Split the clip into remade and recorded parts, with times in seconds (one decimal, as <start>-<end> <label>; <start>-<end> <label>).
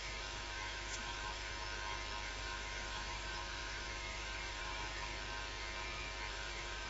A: 0.0-1.5 remade; 1.5-2.3 recorded; 2.3-5.1 remade; 5.1-6.3 recorded; 6.3-6.9 remade